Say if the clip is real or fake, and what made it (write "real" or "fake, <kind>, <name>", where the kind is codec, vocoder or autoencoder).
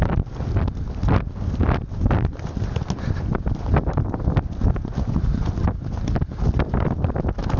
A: real